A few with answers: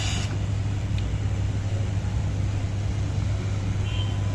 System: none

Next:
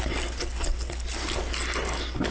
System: none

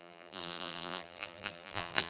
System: vocoder, BigVGAN v2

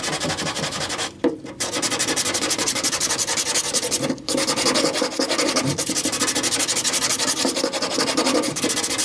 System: none